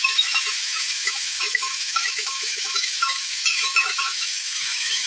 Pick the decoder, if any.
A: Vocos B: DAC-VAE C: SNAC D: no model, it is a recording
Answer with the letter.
B